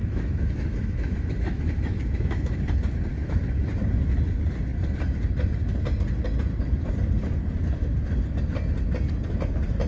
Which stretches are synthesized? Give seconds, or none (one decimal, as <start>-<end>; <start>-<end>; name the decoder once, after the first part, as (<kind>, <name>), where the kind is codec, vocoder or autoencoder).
0.0-2.6 (autoencoder, DAC-VAE); 3.1-3.7